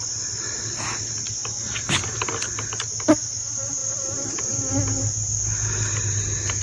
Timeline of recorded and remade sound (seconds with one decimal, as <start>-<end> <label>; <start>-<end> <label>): 0.0-3.8 recorded; 3.8-4.4 remade; 4.4-6.6 recorded